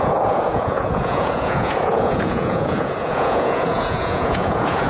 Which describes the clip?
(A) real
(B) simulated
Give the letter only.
B